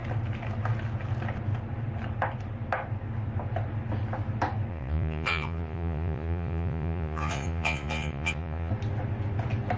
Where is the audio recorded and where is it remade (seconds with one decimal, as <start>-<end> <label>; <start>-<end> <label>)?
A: 0.0-4.7 recorded; 4.7-8.7 remade; 8.7-9.8 recorded